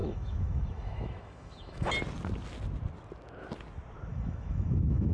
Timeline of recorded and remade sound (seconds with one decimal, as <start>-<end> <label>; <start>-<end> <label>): 0.0-1.9 remade; 1.9-4.1 recorded; 4.1-5.1 remade